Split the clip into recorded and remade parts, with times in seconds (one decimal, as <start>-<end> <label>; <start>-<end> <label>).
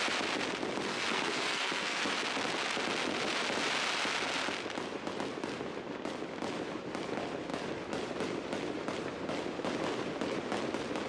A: 0.0-0.9 recorded; 0.9-2.0 remade; 2.0-11.1 recorded